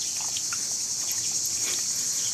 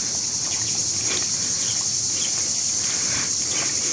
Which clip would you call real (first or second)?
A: first